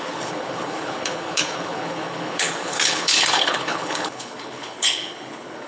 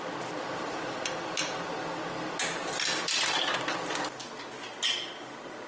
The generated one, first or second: first